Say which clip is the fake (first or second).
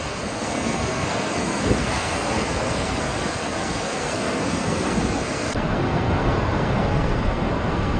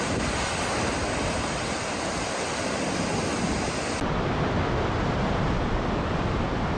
first